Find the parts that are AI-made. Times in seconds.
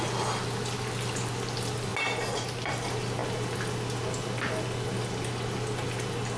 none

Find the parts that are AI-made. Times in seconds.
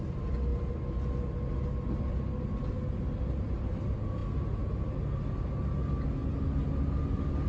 none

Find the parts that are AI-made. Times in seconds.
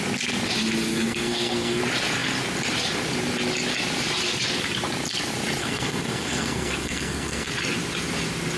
0.9-1.8 (codec, SNAC); 5.6-7.5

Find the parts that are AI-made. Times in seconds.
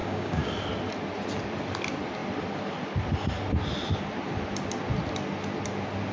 0.0-0.5 (codec, DAC)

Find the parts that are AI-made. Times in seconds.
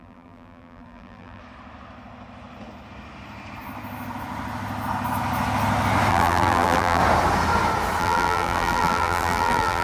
0.0-1.4 (vocoder, BigVGAN v2); 6.1-7.0; 8.0-9.8